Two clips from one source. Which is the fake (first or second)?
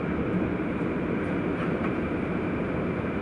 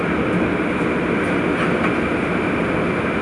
first